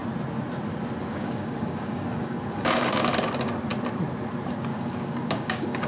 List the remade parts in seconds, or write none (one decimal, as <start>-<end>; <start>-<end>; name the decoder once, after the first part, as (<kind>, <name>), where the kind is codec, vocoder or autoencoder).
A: 1.1-3.0 (codec, DAC); 4.7-5.9